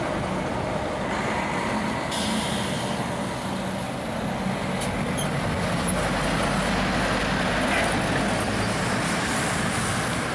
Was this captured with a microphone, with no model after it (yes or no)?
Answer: yes